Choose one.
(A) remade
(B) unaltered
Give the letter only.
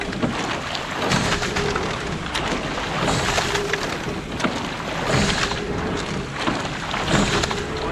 B